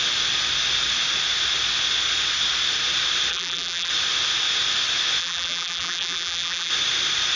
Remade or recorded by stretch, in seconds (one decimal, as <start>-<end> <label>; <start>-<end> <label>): 0.0-3.3 recorded; 3.3-3.9 remade; 3.9-5.2 recorded; 5.2-6.7 remade; 6.7-7.4 recorded